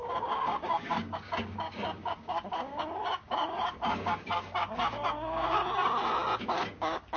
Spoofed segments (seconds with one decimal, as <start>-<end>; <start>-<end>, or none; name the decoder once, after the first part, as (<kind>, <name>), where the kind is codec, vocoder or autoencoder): 0.0-5.6 (codec, DAC); 6.4-7.2